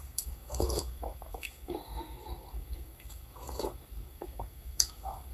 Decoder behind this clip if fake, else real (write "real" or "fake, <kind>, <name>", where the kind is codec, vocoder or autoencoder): fake, codec, SNAC